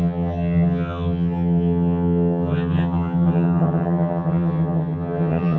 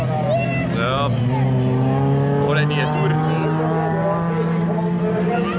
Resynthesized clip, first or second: first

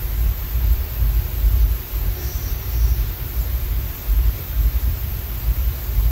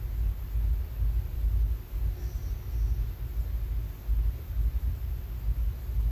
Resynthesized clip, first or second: first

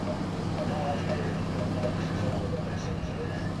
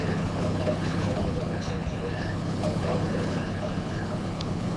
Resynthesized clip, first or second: second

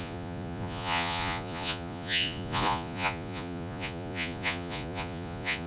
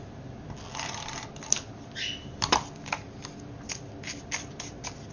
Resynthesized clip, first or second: first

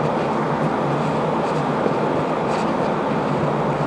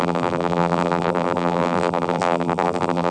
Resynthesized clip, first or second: second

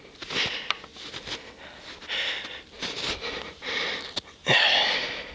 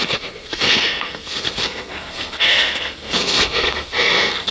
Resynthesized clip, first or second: second